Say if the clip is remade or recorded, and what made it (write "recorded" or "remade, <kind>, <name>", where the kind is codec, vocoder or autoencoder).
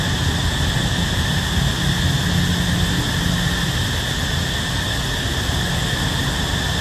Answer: recorded